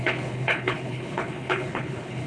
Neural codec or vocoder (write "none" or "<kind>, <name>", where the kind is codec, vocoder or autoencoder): codec, HILCodec